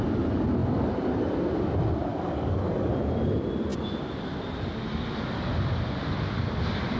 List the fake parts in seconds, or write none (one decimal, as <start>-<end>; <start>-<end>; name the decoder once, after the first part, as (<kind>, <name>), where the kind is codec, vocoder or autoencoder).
2.1-2.9 (codec, DAC)